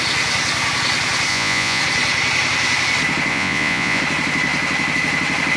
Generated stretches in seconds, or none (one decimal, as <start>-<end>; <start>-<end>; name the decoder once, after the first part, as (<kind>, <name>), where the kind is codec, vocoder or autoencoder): 1.3-1.8 (vocoder, Vocos); 3.3-4.0